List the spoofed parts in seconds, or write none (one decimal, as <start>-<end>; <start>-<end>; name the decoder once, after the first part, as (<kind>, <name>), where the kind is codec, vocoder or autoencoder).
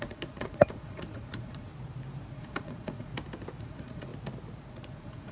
0.0-1.7 (vocoder, Vocos); 2.3-3.1; 3.6-4.1; 4.7-5.3